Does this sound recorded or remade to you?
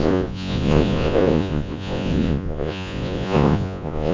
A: remade